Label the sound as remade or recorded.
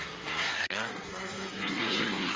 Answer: remade